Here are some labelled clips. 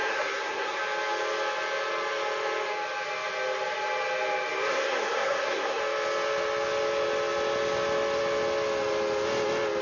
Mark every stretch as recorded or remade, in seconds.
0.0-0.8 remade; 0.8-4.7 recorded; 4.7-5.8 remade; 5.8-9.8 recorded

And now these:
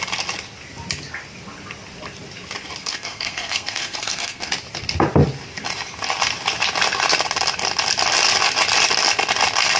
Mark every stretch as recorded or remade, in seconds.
0.0-2.8 recorded; 2.8-4.5 remade; 4.5-9.8 recorded

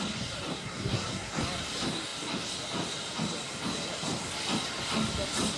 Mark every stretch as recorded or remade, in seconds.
0.0-0.5 recorded; 0.5-1.3 remade; 1.3-5.6 recorded

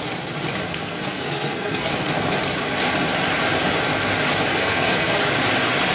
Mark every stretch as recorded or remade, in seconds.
0.0-0.7 recorded; 0.7-1.9 remade; 1.9-4.5 recorded; 4.5-5.2 remade; 5.2-5.9 recorded

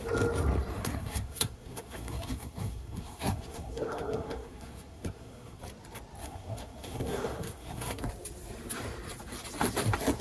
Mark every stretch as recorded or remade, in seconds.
0.0-0.8 recorded; 0.8-5.6 remade; 5.6-6.2 recorded; 6.2-8.0 remade; 8.0-10.2 recorded

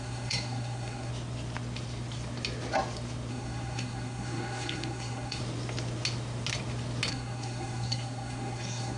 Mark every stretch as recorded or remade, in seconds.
0.0-1.1 remade; 1.1-3.3 recorded; 3.3-5.4 remade; 5.4-7.1 recorded; 7.1-9.0 remade